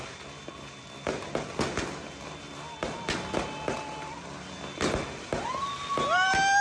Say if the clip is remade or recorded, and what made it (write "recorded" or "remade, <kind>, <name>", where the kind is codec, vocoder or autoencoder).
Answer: recorded